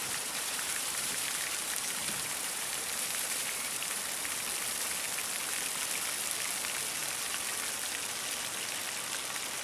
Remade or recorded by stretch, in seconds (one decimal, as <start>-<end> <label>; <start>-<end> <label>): 0.0-4.0 remade; 4.0-9.6 recorded